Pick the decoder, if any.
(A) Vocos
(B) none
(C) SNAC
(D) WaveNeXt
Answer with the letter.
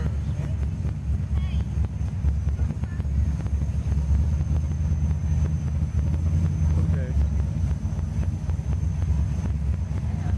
B